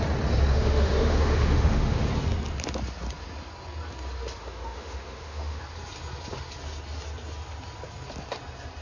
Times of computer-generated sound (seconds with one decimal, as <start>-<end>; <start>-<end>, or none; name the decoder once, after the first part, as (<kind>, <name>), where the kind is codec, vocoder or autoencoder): 0.5-2.1 (autoencoder, DAC-VAE); 4.4-5.6